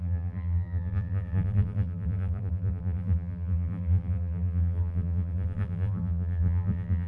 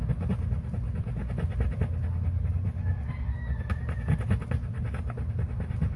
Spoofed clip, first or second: first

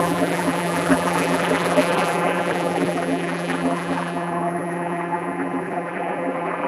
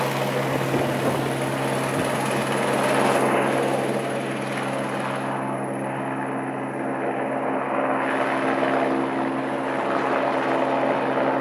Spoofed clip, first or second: first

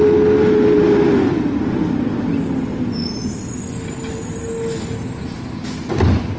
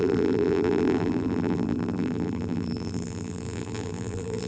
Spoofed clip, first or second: second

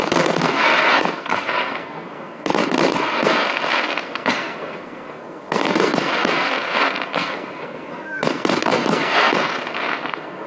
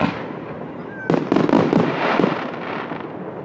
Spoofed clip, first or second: first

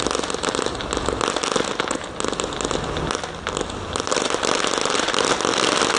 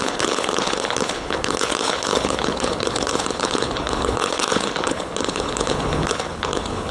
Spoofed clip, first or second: second